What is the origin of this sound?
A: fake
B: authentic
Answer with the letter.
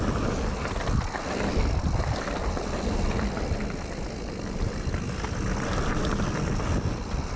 B